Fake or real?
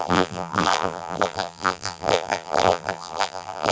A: fake